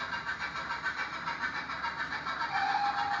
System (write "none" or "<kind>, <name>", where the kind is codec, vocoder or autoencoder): none